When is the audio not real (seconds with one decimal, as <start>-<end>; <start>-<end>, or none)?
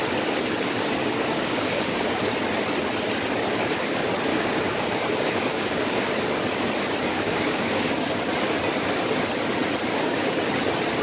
1.0-2.2; 4.3-6.1; 7.1-8.3; 9.9-10.5